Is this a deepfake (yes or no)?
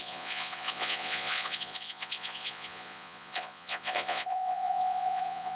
yes